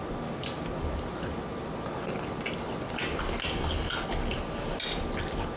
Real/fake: real